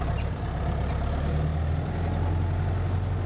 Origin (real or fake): real